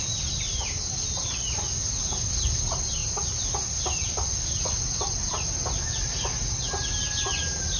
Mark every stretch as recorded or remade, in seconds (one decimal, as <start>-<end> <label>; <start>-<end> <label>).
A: 0.0-7.8 recorded